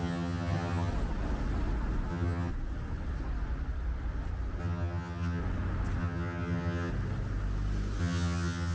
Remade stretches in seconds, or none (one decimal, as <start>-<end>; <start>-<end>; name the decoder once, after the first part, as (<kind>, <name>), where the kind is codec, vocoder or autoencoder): 0.0-0.9 (vocoder, HiFi-GAN); 2.1-2.5; 4.6-5.4; 6.0-6.9; 8.0-8.7